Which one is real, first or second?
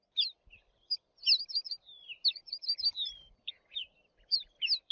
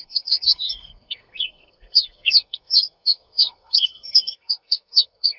first